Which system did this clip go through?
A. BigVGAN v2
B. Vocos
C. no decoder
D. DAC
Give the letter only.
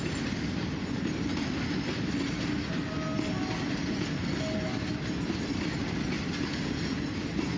C